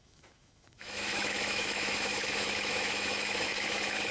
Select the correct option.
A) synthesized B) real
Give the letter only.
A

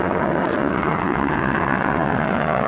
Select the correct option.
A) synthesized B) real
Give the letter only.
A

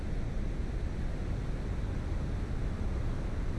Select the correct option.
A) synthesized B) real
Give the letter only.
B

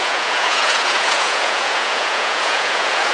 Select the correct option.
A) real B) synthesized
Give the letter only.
B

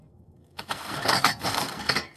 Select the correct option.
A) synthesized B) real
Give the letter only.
A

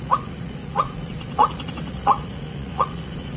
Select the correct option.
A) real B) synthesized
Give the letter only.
B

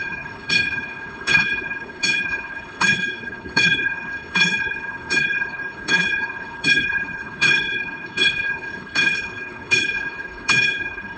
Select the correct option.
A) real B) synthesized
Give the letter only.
B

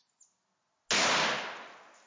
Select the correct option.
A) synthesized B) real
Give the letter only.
B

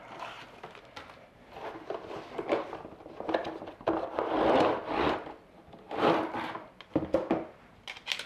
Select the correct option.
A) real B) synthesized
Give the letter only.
A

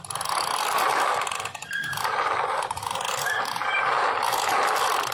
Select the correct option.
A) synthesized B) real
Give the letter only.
B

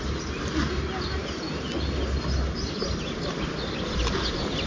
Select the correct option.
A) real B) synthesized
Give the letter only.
A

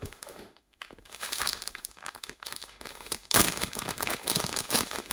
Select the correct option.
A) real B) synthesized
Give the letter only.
B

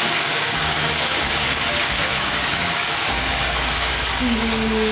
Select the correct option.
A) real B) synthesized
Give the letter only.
B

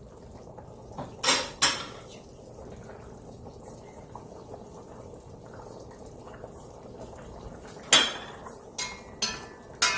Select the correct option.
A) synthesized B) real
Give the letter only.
B